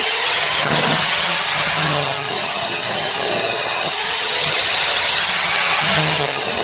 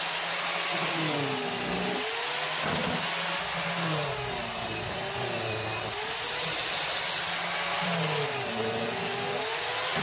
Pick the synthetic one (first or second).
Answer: first